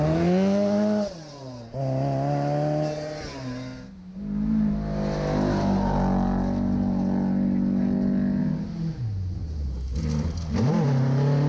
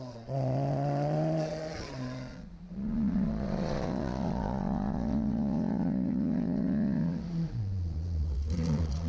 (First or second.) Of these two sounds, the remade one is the second